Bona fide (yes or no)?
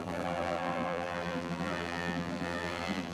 no